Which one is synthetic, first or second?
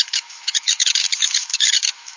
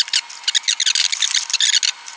first